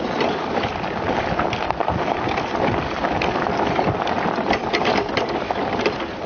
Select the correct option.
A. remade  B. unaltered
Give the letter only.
B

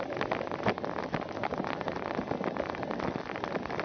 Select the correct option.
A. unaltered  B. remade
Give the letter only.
A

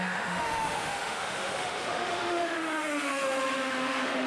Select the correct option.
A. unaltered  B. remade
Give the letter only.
B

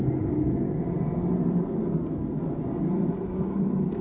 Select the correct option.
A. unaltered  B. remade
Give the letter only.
A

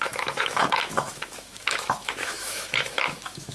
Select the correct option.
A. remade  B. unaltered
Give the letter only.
A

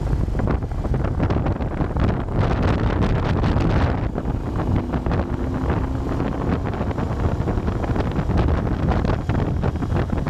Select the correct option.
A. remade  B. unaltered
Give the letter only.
B